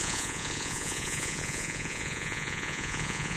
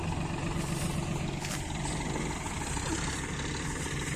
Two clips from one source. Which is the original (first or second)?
second